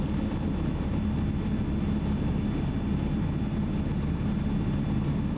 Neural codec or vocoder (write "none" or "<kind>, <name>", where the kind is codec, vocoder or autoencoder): none